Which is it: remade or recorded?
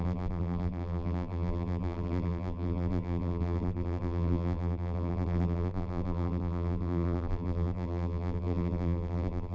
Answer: remade